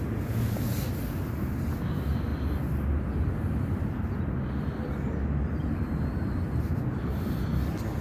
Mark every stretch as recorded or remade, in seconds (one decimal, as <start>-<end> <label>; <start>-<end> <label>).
0.0-2.3 recorded; 2.3-6.7 remade; 6.7-8.0 recorded